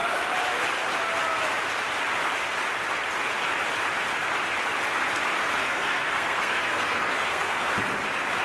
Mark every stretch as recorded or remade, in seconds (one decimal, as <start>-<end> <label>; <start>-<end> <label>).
0.0-5.6 recorded; 5.6-7.7 remade; 7.7-8.4 recorded